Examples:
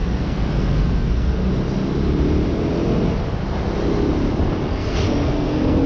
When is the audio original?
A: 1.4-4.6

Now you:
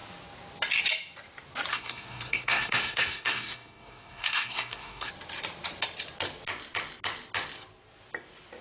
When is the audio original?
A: 0.0-1.7; 5.1-8.6

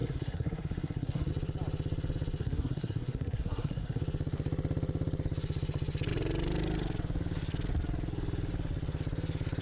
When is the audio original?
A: 1.3-2.4; 4.0-9.6

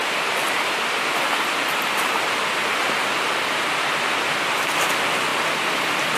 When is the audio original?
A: 0.0-6.2

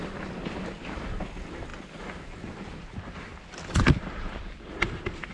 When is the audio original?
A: 0.0-5.3

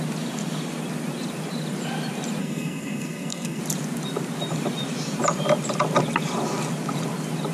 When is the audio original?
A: 0.0-2.4; 3.6-7.5